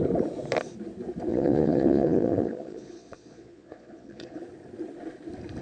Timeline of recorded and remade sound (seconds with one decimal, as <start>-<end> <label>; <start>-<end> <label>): 0.0-1.3 recorded; 1.3-4.4 remade; 4.4-5.6 recorded

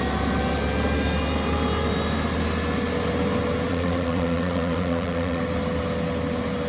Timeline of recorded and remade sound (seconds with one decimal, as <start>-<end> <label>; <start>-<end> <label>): 0.0-3.7 recorded; 3.7-5.4 remade; 5.4-6.7 recorded